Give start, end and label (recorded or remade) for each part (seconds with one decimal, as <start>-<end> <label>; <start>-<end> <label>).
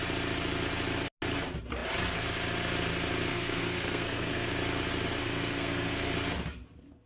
0.0-3.3 recorded; 3.3-4.5 remade; 4.5-5.2 recorded; 5.2-6.1 remade; 6.1-7.1 recorded